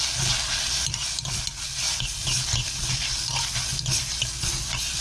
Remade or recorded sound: recorded